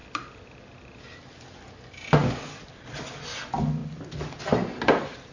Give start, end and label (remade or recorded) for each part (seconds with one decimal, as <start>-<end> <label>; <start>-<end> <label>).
0.0-5.3 recorded